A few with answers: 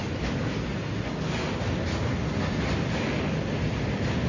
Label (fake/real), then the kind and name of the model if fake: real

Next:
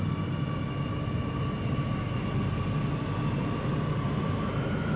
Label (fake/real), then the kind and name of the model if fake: real